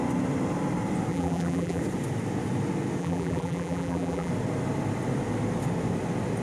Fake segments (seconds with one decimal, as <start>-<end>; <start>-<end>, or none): 1.1-1.8; 3.0-4.3